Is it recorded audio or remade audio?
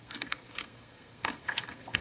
remade